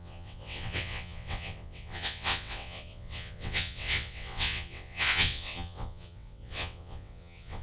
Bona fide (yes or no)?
no